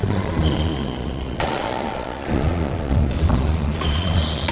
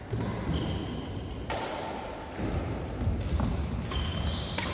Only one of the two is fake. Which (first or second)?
first